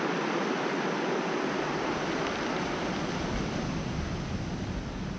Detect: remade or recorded recorded